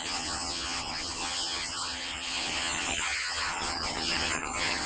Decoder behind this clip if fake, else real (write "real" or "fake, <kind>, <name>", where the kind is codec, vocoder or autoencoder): fake, vocoder, HiFi-GAN